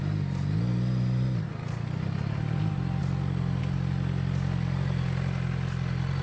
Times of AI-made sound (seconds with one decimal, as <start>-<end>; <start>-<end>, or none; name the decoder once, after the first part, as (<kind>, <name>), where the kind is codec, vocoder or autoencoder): none